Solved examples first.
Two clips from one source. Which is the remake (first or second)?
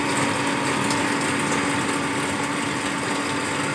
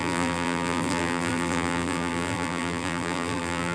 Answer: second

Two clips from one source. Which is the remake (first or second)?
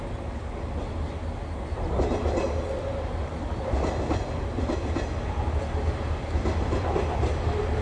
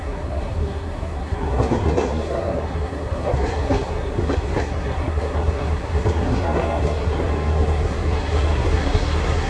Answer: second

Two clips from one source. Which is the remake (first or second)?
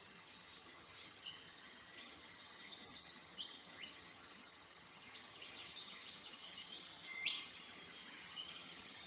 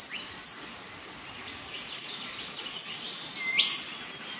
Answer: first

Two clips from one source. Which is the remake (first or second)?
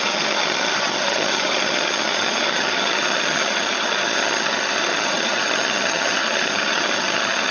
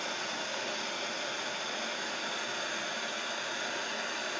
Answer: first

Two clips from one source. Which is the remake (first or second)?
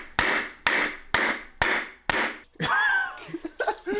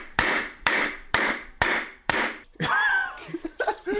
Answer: second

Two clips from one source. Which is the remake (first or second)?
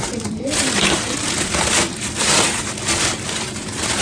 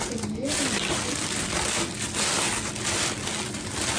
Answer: first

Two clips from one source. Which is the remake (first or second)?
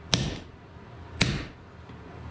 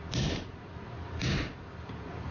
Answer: second